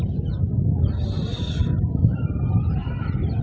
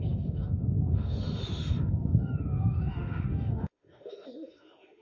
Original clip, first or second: first